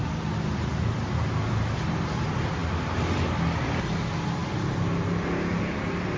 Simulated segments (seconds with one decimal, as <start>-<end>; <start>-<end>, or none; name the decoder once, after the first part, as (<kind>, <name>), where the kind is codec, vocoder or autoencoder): none